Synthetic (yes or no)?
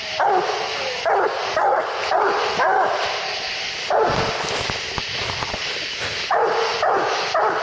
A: no